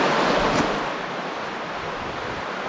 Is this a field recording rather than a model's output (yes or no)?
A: yes